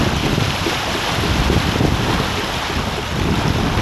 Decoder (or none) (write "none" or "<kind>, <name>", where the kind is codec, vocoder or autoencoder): none